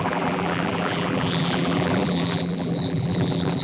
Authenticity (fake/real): fake